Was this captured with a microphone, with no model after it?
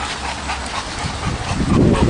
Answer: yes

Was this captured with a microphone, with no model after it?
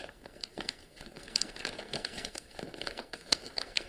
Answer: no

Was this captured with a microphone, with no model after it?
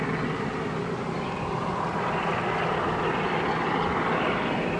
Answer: yes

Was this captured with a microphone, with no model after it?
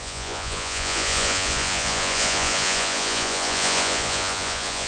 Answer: no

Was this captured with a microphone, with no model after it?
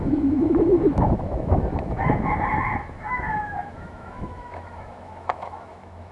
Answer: no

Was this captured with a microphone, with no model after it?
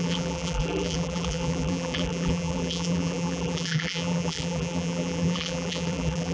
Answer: no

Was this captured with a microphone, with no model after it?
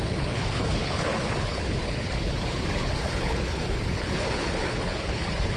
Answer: no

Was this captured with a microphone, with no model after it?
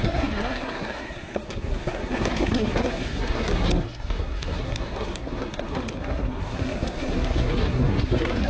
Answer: no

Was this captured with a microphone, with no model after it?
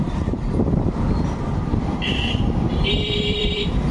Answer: no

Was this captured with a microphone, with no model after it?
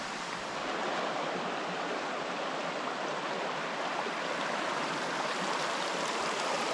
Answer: yes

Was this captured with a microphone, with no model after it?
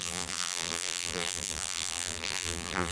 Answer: no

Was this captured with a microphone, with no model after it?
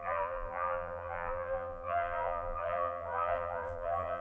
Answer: no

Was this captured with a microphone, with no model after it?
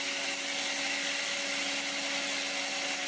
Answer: yes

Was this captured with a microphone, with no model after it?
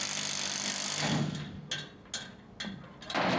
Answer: yes